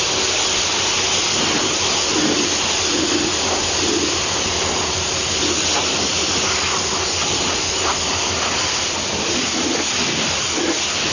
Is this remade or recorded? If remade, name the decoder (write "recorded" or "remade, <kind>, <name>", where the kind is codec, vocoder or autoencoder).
recorded